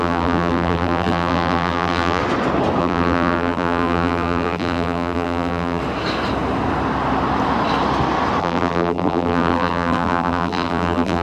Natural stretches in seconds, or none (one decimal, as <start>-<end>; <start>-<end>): 2.2-2.8; 5.8-8.4